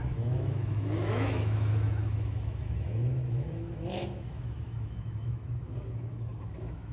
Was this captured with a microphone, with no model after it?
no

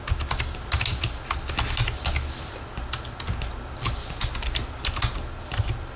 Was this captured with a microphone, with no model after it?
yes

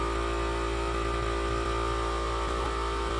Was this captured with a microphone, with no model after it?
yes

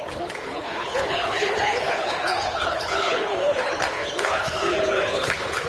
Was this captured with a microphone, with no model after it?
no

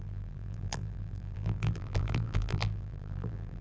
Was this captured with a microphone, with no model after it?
no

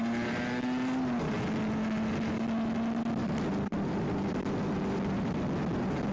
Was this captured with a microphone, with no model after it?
yes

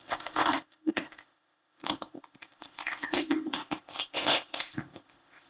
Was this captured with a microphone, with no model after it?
no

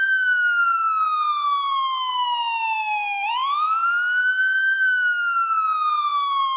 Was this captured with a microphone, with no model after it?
yes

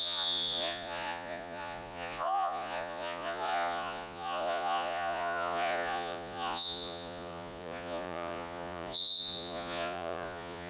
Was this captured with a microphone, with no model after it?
no